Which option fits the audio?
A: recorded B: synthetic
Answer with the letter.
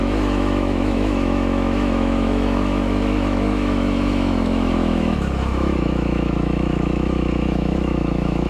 B